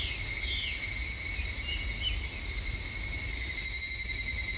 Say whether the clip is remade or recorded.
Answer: recorded